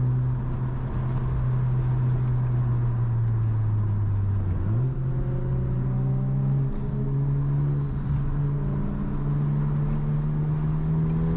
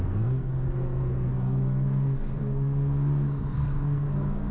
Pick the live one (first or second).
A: first